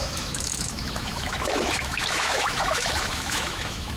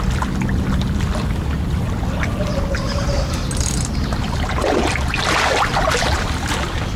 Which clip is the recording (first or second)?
second